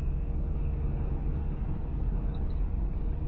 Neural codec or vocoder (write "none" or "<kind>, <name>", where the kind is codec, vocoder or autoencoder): codec, DAC